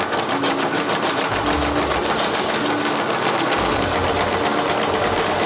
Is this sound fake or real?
real